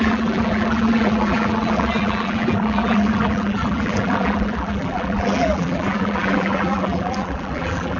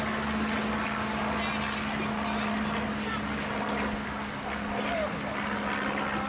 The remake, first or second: first